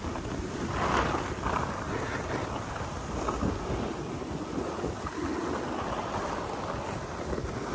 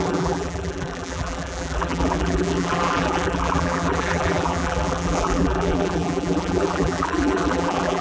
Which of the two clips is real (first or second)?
first